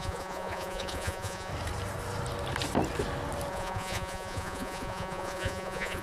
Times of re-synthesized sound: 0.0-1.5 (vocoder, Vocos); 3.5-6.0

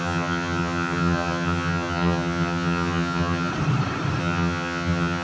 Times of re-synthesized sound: 0.0-3.5 (vocoder, HiFi-GAN); 4.2-5.2